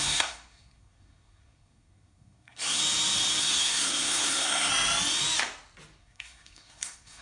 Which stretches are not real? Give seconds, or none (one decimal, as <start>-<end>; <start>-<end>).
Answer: 0.0-2.8; 3.4-4.7; 6.0-7.2